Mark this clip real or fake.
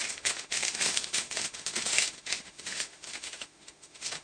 fake